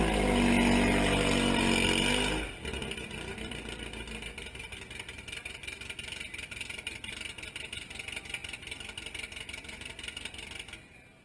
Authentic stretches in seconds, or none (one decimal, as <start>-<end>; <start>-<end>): 0.0-11.2